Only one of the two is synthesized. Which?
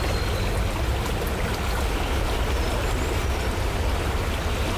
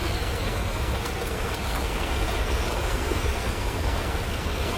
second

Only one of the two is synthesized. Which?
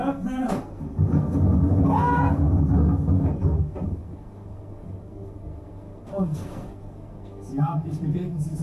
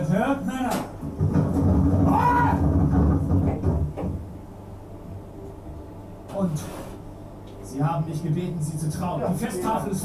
first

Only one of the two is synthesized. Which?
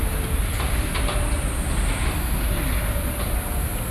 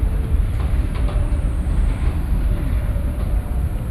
second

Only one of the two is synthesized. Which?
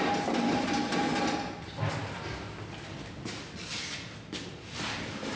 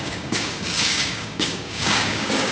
second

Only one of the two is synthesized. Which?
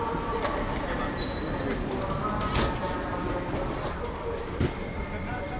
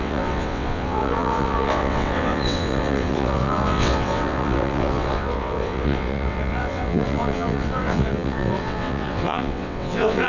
second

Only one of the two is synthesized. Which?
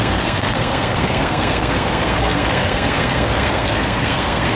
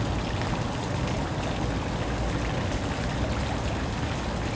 first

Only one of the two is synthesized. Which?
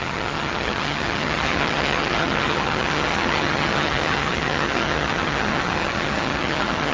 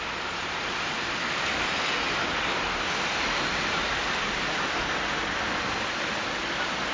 first